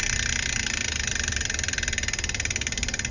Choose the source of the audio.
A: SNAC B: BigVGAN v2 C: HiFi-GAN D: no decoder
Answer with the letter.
D